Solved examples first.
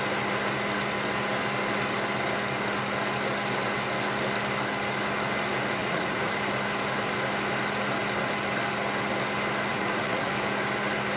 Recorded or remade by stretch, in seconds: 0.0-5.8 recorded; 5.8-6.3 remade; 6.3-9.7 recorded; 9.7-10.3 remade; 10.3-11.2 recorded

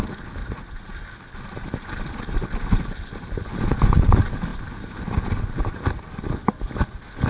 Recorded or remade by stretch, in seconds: 0.0-0.4 recorded; 0.4-1.0 remade; 1.0-7.3 recorded

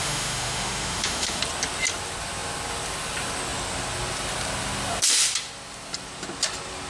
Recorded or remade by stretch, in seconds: 0.0-1.4 remade; 1.4-6.9 recorded

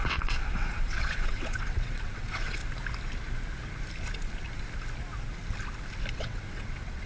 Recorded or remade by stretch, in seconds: 0.0-2.6 remade; 2.6-6.1 recorded; 6.1-7.1 remade

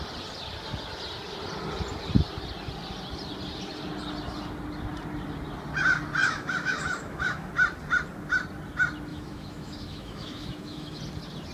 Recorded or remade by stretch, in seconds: 0.0-6.2 recorded; 6.2-7.5 remade; 7.5-9.1 recorded; 9.1-11.0 remade; 11.0-11.5 recorded

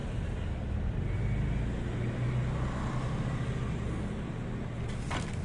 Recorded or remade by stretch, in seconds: 0.0-5.4 recorded

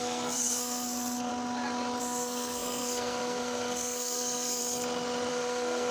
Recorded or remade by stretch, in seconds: 0.0-1.3 remade; 1.3-2.0 recorded; 2.0-4.6 remade; 4.6-5.3 recorded; 5.3-5.9 remade

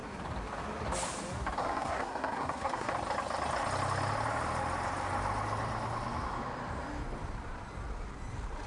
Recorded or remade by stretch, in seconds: 0.0-1.6 recorded; 1.6-2.9 remade; 2.9-8.7 recorded